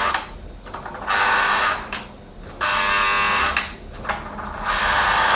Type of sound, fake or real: real